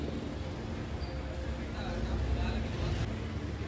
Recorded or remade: recorded